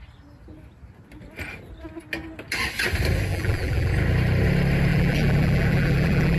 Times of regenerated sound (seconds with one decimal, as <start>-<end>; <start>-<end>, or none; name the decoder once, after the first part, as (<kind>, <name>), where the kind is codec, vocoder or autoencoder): 3.3-3.9 (vocoder, BigVGAN v2); 4.9-6.4